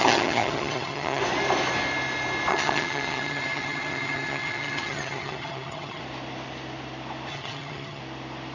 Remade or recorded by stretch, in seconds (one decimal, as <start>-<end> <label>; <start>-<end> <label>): 0.0-1.2 remade; 1.2-2.5 recorded; 2.5-6.0 remade; 6.0-7.3 recorded; 7.3-8.0 remade; 8.0-8.5 recorded